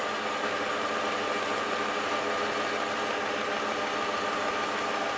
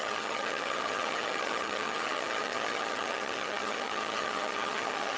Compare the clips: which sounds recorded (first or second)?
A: first